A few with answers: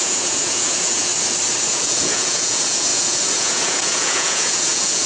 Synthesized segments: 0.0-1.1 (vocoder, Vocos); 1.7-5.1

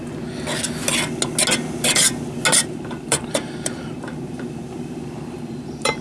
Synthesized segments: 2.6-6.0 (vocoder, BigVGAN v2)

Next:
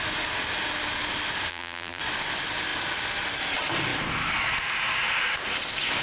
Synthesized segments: 1.5-2.0 (vocoder, BigVGAN v2)